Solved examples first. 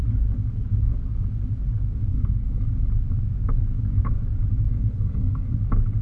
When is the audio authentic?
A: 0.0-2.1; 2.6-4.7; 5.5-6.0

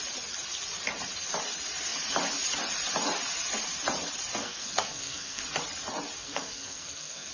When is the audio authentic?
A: 0.0-4.4; 5.4-6.2

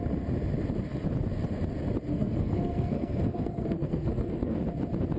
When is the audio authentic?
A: 0.0-2.1; 4.6-5.2

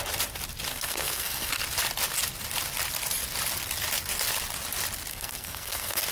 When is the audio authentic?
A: 0.0-0.7; 1.5-5.1

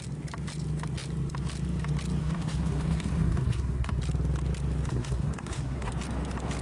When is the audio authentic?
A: 0.0-2.2; 4.0-4.9; 5.9-6.6